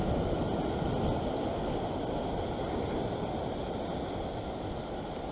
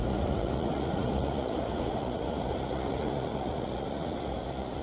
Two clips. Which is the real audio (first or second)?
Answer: first